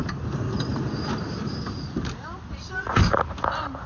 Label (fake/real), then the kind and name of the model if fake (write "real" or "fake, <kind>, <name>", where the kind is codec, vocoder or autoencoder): real